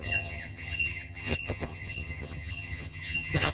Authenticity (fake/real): fake